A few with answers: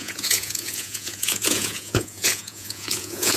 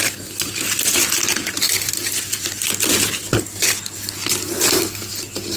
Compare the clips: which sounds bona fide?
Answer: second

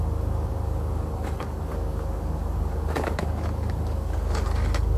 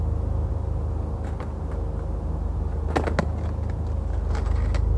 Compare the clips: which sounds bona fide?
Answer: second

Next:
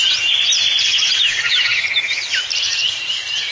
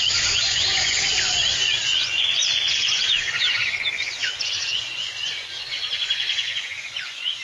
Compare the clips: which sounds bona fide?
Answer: first